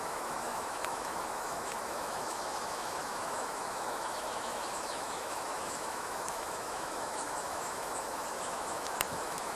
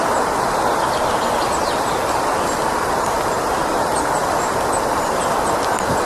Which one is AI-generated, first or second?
first